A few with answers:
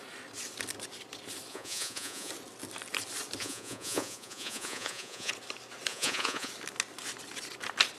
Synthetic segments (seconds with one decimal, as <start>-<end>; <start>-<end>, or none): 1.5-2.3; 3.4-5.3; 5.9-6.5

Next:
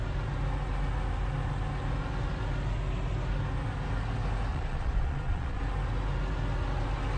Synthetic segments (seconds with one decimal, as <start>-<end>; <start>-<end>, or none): 4.5-5.6

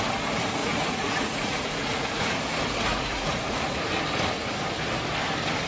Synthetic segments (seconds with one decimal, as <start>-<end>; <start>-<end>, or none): 0.6-2.4; 2.9-3.8